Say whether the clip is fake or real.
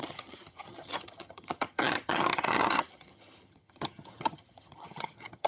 fake